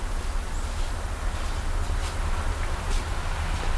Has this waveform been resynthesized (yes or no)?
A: no